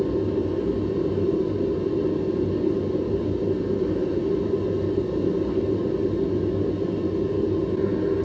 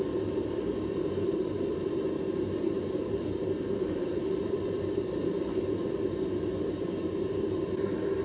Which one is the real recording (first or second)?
first